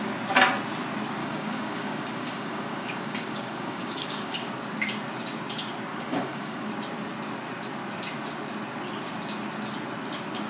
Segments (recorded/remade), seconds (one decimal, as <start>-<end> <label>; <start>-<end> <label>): 0.0-1.2 recorded; 1.2-4.5 remade; 4.5-5.9 recorded; 5.9-6.7 remade; 6.7-10.5 recorded

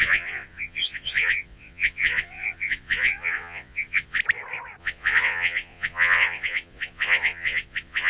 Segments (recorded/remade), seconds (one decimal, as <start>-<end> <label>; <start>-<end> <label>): 0.0-4.2 remade; 4.2-4.8 recorded; 4.8-8.1 remade

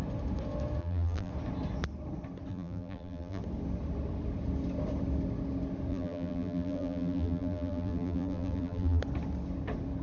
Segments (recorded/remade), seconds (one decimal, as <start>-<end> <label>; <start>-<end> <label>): 0.0-0.8 recorded; 0.8-1.3 remade; 1.3-2.5 recorded; 2.5-3.4 remade; 3.4-5.9 recorded; 5.9-9.0 remade; 9.0-10.0 recorded

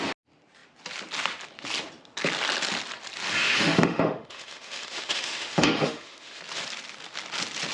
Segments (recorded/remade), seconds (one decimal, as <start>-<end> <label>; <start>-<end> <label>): 0.0-3.4 recorded; 3.4-6.4 remade; 6.4-7.7 recorded

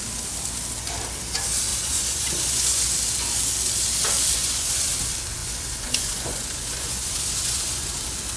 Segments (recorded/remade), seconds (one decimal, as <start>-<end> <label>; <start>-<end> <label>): 0.0-1.7 recorded; 1.7-2.8 remade; 2.8-4.4 recorded; 4.4-4.9 remade; 4.9-5.4 recorded; 5.4-8.0 remade; 8.0-8.4 recorded

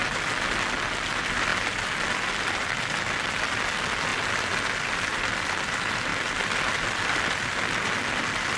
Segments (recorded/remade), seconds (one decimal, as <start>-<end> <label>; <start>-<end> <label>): 0.0-8.6 recorded

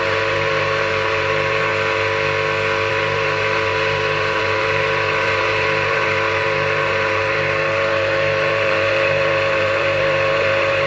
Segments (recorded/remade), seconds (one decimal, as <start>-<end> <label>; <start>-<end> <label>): 0.0-1.7 remade; 1.7-2.9 recorded; 2.9-10.9 remade